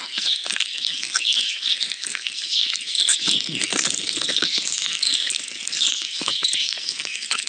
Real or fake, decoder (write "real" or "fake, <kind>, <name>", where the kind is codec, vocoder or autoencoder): fake, codec, SNAC